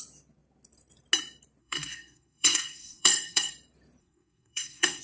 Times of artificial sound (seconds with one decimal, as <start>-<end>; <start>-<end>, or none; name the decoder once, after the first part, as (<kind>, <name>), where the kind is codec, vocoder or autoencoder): 1.6-3.5 (codec, SNAC); 4.0-5.0